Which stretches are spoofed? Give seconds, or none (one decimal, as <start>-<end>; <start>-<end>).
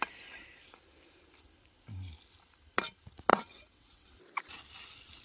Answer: 3.3-4.2